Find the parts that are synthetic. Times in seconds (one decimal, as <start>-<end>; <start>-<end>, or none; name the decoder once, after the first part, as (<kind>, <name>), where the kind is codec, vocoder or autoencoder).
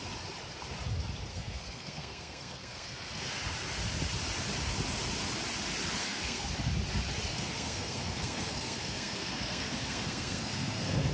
1.3-3.3 (codec, SNAC); 6.0-6.5; 7.3-11.1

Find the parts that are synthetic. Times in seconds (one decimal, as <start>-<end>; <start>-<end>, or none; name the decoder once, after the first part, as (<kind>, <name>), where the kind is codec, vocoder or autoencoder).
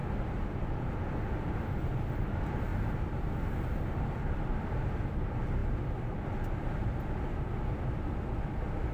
none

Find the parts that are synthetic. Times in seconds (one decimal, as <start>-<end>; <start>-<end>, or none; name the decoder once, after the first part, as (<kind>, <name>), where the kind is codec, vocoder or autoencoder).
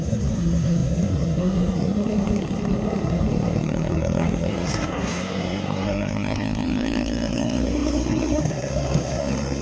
0.0-9.6 (codec, SNAC)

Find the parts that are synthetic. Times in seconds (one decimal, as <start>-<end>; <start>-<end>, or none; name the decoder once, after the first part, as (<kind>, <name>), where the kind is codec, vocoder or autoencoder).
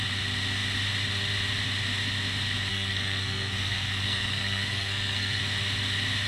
2.7-5.4 (codec, SNAC)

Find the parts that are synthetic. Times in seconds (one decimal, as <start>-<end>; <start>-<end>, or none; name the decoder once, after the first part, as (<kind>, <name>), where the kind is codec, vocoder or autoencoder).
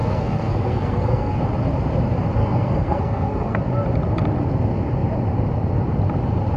0.0-1.4 (codec, SNAC); 2.4-3.6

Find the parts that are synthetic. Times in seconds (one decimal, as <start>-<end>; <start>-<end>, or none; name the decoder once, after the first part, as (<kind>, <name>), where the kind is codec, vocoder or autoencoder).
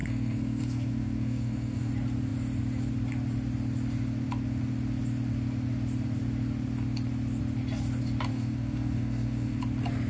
0.0-1.9 (codec, SNAC); 8.3-9.6